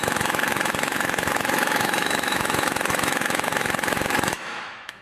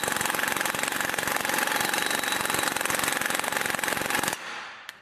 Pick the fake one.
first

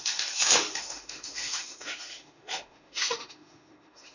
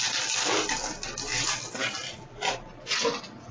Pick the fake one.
first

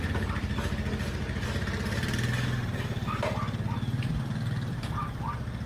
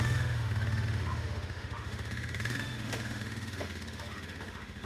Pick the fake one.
second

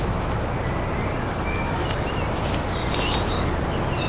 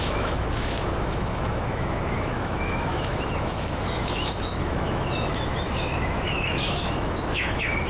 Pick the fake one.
second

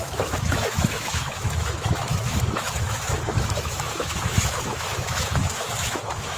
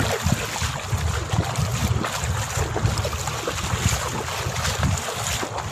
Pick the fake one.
first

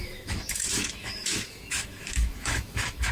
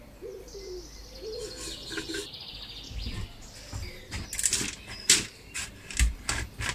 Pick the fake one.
first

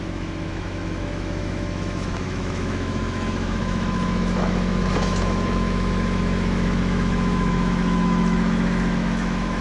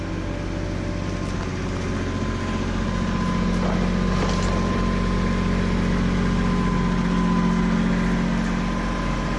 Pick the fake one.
first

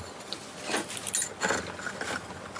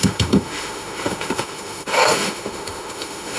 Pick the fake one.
second